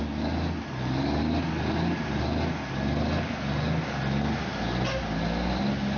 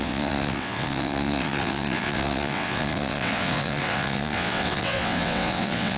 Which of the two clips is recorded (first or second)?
first